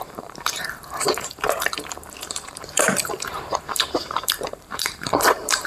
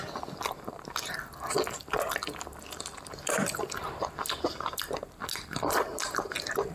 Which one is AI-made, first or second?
first